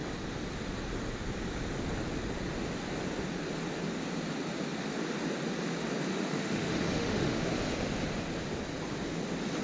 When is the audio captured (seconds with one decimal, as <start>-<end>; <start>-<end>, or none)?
0.0-6.1; 7.5-9.6